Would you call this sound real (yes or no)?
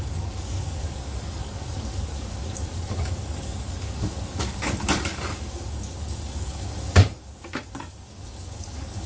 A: no